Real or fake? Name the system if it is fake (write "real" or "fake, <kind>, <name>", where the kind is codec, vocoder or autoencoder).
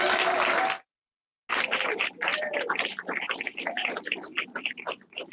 real